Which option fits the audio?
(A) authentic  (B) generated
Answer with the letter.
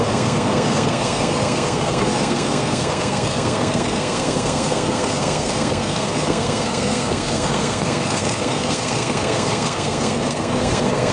B